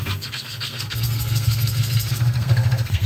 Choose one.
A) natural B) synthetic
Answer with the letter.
B